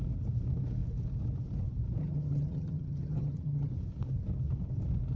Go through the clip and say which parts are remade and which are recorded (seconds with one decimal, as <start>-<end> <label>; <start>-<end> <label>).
0.0-2.0 recorded; 2.0-3.7 remade; 3.7-5.2 recorded